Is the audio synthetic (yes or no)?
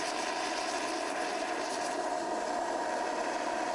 no